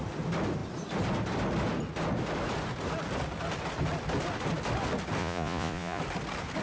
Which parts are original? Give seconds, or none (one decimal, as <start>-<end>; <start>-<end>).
0.0-5.2; 6.0-6.6